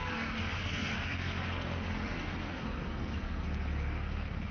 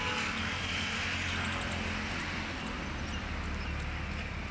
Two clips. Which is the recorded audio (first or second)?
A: second